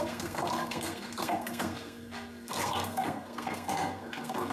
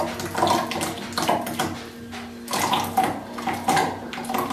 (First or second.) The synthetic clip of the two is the first